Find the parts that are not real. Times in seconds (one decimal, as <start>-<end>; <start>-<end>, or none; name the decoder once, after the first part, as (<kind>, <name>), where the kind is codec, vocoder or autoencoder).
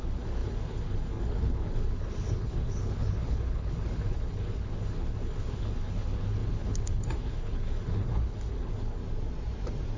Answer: 0.0-9.0 (codec, HILCodec)